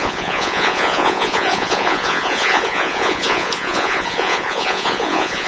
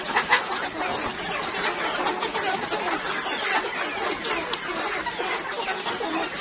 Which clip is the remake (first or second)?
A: first